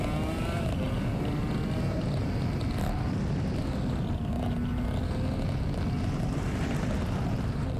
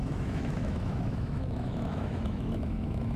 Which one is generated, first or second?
second